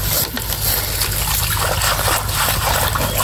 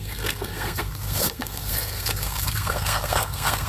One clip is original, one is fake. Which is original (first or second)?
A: first